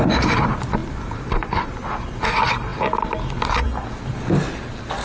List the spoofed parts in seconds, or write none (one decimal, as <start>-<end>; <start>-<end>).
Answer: 0.8-2.2